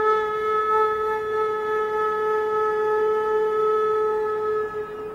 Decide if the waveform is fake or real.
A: real